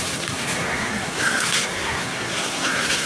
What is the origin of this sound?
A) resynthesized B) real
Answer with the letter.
A